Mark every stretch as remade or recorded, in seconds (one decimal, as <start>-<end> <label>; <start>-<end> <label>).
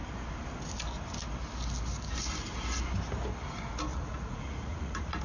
0.0-3.9 recorded; 3.9-5.2 remade